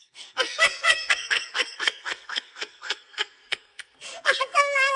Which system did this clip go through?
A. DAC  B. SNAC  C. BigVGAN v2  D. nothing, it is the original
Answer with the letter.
B